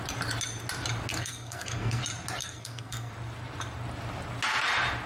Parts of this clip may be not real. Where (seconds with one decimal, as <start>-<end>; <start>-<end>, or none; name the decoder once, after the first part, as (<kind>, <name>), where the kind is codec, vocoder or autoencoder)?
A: 1.1-2.0 (codec, SNAC); 2.4-3.1